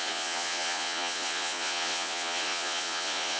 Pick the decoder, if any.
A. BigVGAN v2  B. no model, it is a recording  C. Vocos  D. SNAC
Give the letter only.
C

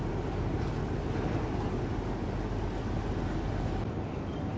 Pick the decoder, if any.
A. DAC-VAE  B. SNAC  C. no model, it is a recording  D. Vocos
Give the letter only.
C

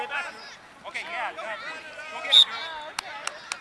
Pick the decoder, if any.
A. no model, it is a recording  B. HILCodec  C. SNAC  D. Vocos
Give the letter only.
A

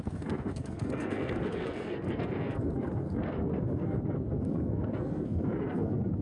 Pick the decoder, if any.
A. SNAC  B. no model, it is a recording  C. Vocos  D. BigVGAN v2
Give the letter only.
A